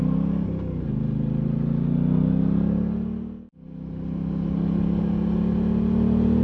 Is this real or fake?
real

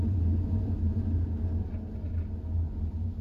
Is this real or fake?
real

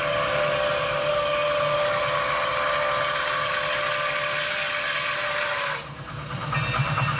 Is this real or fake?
real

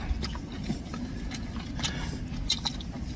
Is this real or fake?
real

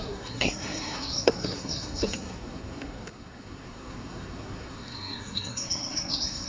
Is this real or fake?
fake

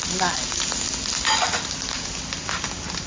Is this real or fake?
real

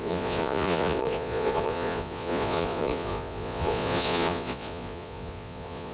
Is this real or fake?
fake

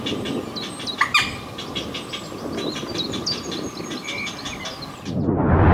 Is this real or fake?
real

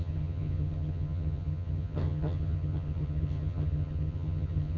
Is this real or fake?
fake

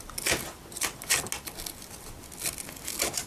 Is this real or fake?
real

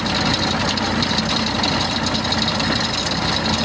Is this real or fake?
real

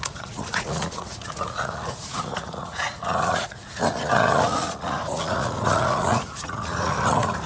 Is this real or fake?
fake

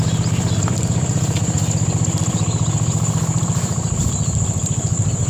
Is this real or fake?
fake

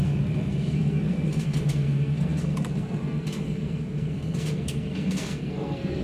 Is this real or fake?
fake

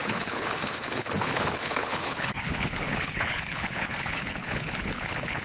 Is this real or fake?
fake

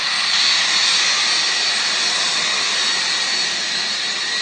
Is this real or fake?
real